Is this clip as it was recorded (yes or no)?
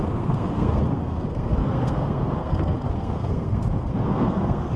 no